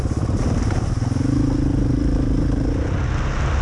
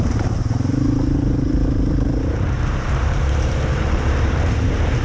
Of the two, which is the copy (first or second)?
second